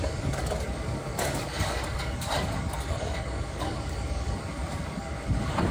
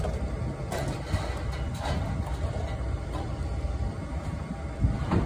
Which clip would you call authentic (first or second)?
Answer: second